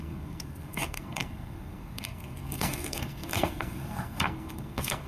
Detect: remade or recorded remade